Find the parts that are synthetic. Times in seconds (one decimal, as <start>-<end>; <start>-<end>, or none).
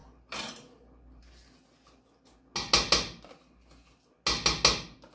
none